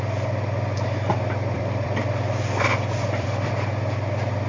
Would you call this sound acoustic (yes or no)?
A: no